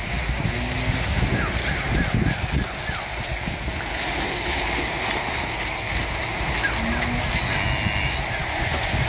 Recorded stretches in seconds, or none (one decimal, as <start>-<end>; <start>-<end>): 0.0-8.4